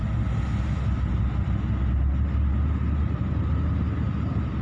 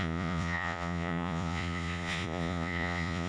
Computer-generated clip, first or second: second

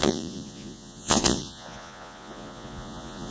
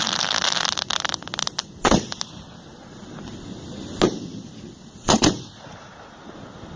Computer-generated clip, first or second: first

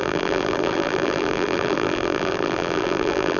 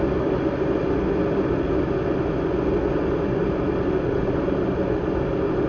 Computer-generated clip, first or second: first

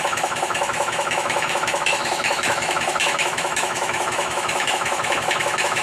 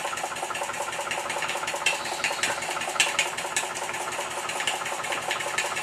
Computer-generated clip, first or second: first